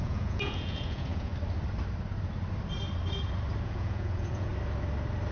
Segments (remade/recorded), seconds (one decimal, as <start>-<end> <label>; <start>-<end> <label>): 0.0-1.3 remade; 1.3-3.6 recorded; 3.6-4.5 remade; 4.5-5.3 recorded